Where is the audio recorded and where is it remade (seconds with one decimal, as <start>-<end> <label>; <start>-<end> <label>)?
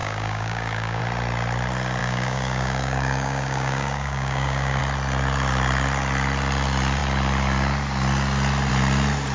0.0-1.0 remade; 1.0-2.0 recorded; 2.0-4.8 remade; 4.8-9.3 recorded